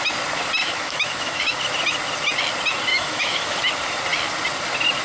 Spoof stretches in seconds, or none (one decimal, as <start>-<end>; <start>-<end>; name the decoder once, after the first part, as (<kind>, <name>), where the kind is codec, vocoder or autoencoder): 0.6-1.6 (autoencoder, DAC-VAE); 2.9-3.6

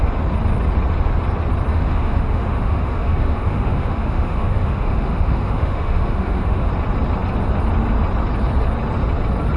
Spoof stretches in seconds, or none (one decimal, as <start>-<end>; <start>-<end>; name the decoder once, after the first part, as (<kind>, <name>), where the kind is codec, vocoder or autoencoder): 1.7-6.7 (autoencoder, DAC-VAE)

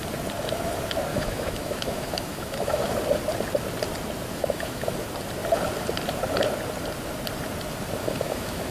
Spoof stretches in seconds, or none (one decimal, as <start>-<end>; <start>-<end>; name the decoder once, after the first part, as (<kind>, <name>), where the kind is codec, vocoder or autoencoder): 1.1-2.9 (autoencoder, DAC-VAE); 4.3-4.9; 8.0-8.7

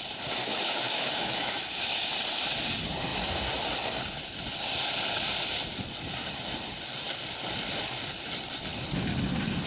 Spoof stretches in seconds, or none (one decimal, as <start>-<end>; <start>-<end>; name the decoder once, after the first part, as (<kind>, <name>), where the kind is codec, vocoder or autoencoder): 0.4-2.0 (autoencoder, DAC-VAE)